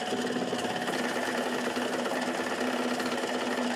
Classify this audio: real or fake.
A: real